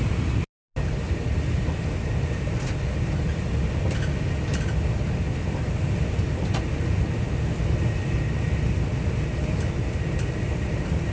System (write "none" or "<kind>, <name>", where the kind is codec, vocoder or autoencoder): none